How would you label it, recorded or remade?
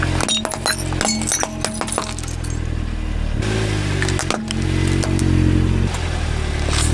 recorded